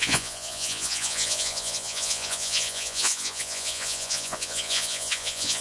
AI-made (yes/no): yes